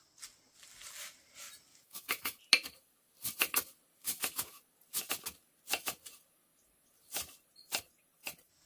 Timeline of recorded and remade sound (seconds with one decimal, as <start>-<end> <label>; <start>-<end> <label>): 0.0-1.7 recorded; 1.7-2.4 remade; 2.4-4.0 recorded; 4.0-4.6 remade; 4.6-8.7 recorded